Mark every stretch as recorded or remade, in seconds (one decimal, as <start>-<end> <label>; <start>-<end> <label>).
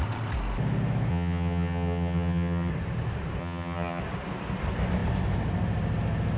0.0-1.1 recorded; 1.1-2.7 remade; 2.7-3.4 recorded; 3.4-4.0 remade; 4.0-6.4 recorded